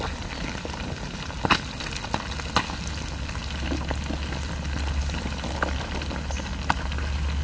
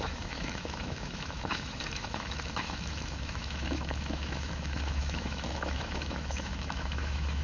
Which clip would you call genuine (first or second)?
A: first